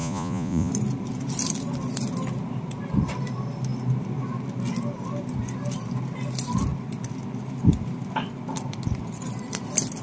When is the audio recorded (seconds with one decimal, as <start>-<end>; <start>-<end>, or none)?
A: 0.7-10.0